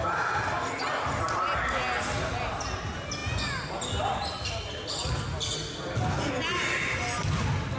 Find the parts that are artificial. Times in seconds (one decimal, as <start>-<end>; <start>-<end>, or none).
none